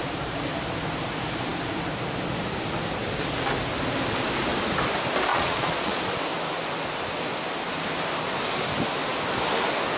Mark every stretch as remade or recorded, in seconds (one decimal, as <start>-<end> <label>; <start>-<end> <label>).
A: 0.0-5.3 recorded; 5.3-6.0 remade; 6.0-10.0 recorded